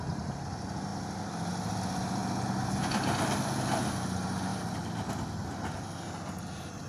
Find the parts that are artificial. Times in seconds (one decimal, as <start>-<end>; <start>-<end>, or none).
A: 0.9-1.5; 4.5-5.1

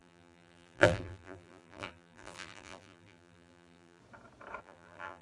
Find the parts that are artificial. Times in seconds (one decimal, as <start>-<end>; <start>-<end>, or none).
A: 0.0-4.0; 4.6-5.2

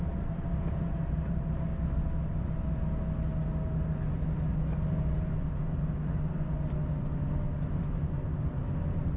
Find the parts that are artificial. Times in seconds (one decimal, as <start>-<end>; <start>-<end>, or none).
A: 0.0-1.7; 5.5-6.0; 7.8-9.2

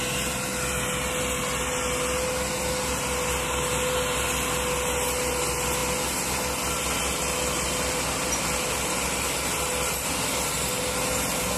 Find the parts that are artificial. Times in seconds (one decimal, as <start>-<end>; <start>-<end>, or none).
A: none

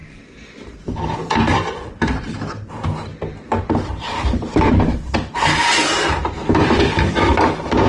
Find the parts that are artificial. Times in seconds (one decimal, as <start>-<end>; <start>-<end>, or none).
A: 0.0-3.1; 3.6-7.9

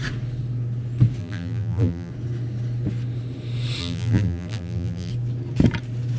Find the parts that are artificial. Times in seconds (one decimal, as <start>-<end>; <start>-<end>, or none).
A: 1.2-2.1; 3.8-5.1

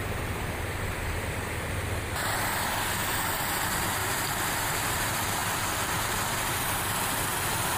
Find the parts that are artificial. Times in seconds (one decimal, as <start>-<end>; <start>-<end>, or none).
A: none